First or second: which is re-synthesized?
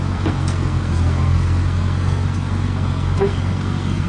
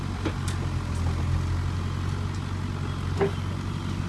first